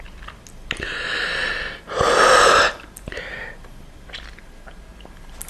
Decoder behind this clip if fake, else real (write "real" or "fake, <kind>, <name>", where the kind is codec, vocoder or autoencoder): real